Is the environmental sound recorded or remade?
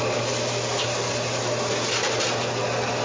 recorded